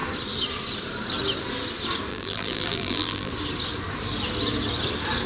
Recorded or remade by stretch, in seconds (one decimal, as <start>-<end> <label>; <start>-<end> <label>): 0.0-2.1 recorded; 2.1-3.3 remade; 3.3-5.3 recorded